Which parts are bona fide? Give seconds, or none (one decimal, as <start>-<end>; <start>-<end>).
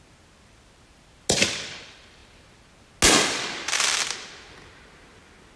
0.0-5.6